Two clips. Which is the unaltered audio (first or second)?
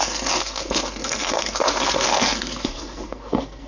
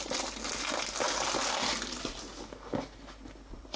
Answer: second